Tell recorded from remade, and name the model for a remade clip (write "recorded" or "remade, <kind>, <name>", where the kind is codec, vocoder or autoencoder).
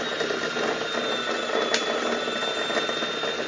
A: recorded